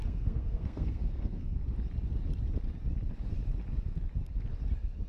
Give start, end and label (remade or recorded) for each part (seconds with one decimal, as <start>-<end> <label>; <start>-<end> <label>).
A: 0.0-1.6 remade; 1.6-5.1 recorded